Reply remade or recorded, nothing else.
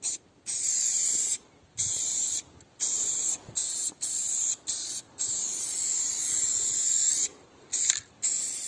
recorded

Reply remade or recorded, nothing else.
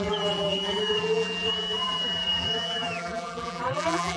remade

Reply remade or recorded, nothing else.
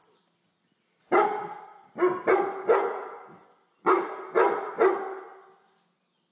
recorded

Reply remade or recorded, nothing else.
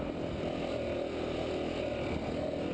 recorded